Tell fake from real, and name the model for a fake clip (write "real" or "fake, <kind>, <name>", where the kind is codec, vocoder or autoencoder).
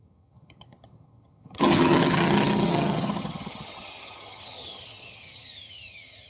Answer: fake, vocoder, HiFi-GAN